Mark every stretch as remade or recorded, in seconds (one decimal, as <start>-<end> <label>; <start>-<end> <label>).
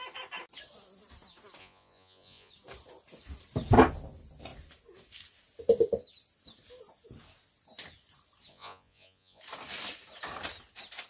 0.0-1.6 recorded; 1.6-2.5 remade; 2.5-8.5 recorded; 8.5-9.4 remade; 9.4-11.1 recorded